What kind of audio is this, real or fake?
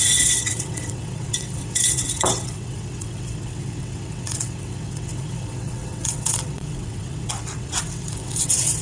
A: fake